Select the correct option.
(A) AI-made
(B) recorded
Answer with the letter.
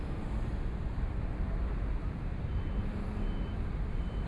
A